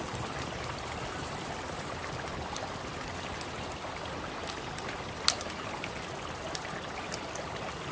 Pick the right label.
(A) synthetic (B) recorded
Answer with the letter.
B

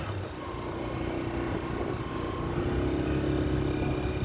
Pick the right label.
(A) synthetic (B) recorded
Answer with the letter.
B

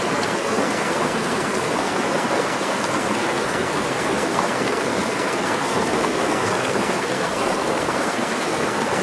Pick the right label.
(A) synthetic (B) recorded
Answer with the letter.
A